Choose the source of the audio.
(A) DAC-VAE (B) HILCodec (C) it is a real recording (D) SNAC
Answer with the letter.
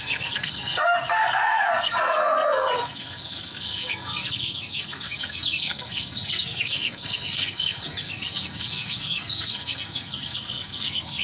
D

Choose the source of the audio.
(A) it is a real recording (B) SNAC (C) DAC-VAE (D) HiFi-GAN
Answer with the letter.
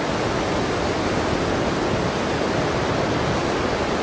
A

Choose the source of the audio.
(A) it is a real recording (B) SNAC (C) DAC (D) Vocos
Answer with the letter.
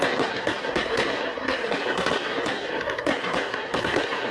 B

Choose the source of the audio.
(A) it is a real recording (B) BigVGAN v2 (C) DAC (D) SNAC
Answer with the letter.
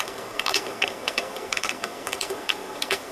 D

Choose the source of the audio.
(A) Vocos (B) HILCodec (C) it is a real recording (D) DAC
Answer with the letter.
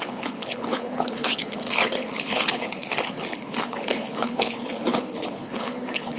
B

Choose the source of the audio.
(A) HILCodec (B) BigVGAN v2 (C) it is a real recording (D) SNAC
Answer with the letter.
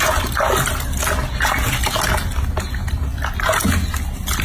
C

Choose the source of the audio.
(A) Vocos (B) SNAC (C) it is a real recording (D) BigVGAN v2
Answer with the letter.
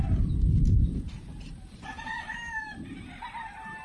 D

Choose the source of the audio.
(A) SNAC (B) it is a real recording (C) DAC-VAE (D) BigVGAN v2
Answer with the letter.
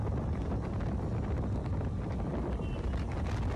B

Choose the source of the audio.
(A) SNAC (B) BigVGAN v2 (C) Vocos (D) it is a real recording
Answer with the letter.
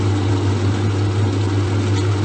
D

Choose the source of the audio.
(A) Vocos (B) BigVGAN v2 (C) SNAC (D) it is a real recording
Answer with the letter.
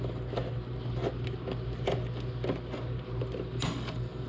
D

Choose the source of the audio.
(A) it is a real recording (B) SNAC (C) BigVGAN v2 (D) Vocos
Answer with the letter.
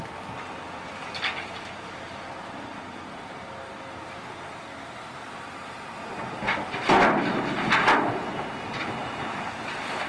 A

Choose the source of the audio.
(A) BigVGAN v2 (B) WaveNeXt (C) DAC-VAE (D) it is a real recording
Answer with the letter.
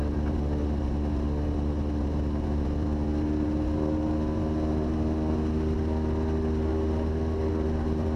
D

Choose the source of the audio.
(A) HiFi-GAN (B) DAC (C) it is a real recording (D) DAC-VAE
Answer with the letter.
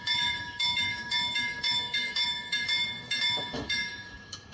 D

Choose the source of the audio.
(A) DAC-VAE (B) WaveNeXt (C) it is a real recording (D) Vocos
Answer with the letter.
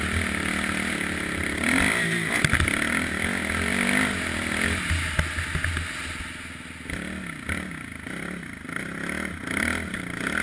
C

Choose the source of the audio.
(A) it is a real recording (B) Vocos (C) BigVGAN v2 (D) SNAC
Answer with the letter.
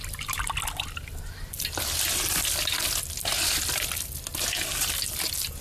A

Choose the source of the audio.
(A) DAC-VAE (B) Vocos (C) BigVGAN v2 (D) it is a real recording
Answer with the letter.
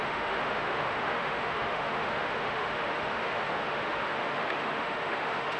A